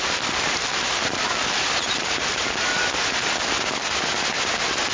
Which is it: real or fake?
real